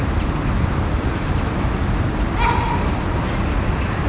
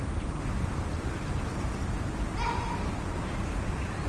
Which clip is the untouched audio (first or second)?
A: first